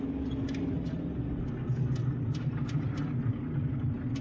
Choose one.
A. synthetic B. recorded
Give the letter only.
B